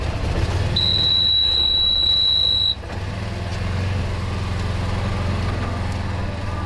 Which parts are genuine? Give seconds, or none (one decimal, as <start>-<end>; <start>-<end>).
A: 0.0-6.7